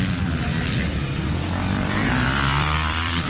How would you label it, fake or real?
fake